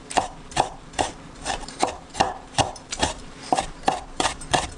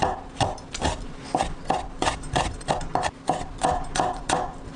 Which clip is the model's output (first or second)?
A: first